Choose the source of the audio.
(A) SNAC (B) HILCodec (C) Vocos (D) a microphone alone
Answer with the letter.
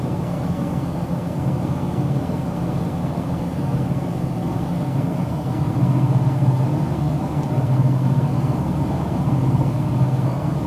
A